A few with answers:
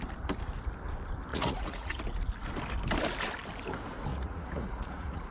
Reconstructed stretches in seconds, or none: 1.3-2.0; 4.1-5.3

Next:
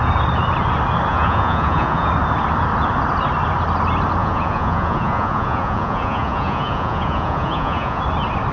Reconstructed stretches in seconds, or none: 1.1-2.1; 4.2-8.0

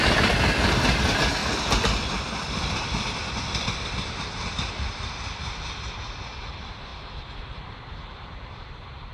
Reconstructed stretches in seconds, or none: 1.4-5.8

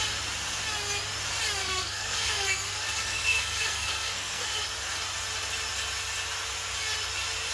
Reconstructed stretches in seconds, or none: 1.6-4.6

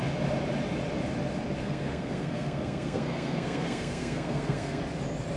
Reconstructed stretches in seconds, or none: 1.6-4.8